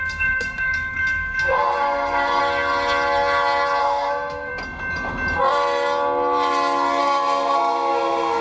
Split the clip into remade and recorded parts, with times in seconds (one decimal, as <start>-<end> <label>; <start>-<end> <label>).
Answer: 0.0-2.4 remade; 2.4-3.8 recorded; 3.8-4.5 remade; 4.5-7.0 recorded; 7.0-8.4 remade